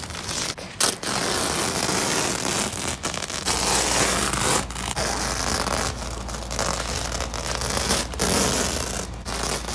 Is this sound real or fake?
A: real